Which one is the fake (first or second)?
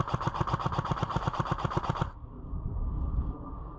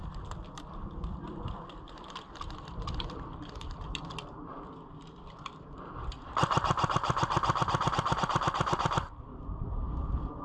second